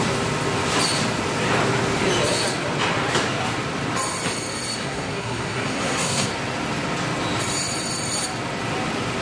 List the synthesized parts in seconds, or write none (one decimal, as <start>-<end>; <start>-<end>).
4.8-6.3